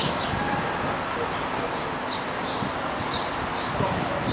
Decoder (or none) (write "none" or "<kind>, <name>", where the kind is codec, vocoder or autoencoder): none